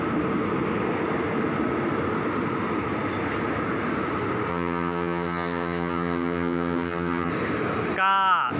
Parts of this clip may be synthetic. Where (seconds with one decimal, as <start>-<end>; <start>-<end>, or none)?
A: 4.5-7.3

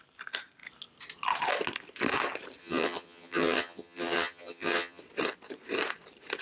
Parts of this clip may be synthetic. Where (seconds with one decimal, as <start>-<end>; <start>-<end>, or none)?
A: 2.6-5.0